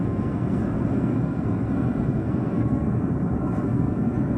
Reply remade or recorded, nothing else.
remade